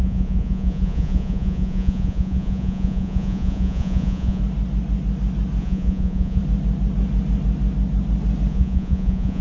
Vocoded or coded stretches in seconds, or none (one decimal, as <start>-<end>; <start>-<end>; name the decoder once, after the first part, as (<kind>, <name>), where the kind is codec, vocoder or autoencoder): 0.0-4.4 (vocoder, Vocos); 5.6-6.4; 8.5-9.4